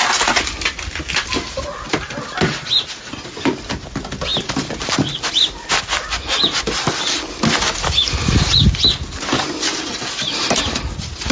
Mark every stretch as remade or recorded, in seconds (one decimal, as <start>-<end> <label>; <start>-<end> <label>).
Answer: 0.0-11.3 recorded